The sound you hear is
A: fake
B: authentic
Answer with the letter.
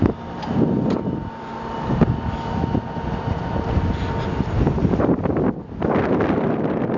B